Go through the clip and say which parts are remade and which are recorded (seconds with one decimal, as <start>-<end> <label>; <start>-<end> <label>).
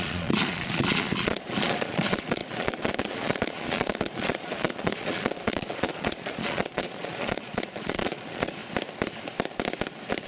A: 0.0-8.6 remade; 8.6-10.3 recorded